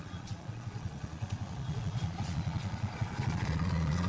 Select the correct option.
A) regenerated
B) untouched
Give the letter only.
A